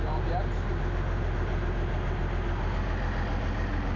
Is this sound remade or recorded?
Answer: recorded